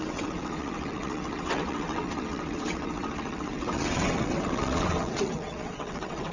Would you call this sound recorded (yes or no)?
no